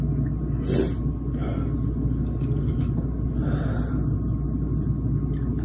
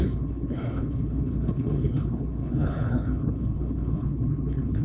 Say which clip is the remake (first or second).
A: second